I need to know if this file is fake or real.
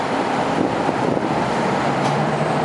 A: fake